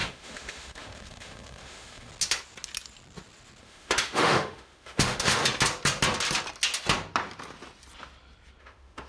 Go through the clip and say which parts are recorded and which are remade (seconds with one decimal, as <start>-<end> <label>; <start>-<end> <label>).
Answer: 0.0-2.1 remade; 2.1-3.6 recorded; 3.6-5.4 remade; 5.4-8.6 recorded; 8.6-9.1 remade